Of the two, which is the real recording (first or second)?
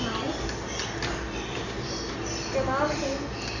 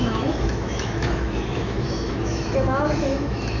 first